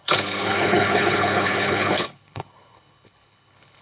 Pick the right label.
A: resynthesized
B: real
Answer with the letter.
A